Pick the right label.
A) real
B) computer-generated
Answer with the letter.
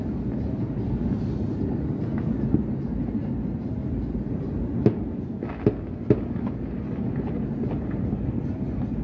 A